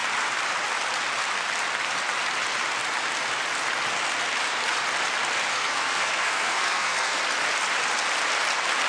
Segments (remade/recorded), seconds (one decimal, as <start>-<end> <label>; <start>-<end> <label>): 0.0-5.5 recorded; 5.5-7.2 remade; 7.2-8.9 recorded